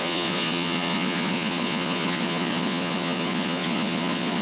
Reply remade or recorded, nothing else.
remade